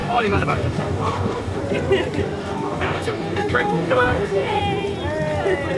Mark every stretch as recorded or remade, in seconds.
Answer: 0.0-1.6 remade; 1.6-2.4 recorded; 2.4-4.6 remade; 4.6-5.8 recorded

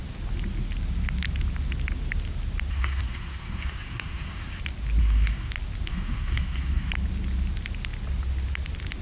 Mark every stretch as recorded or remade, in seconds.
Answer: 0.0-2.7 recorded; 2.7-4.6 remade; 4.6-5.0 recorded; 5.0-5.5 remade; 5.5-5.9 recorded; 5.9-6.9 remade; 6.9-9.0 recorded

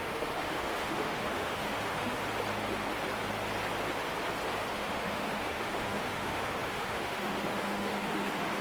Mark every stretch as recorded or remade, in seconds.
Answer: 0.0-2.2 remade; 2.2-4.7 recorded; 4.7-8.6 remade